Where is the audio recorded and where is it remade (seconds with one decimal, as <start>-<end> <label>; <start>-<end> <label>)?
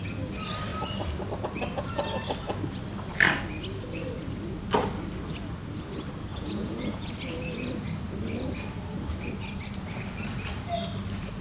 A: 0.0-6.3 recorded; 6.3-7.1 remade; 7.1-11.4 recorded